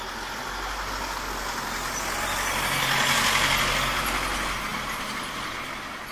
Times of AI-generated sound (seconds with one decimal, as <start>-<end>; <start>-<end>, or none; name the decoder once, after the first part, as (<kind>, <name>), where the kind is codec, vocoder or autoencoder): none